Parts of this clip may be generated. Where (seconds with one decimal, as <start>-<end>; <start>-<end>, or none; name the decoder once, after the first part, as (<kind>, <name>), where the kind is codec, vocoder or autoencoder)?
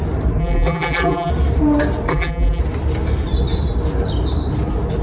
0.4-1.3 (vocoder, BigVGAN v2); 2.1-2.6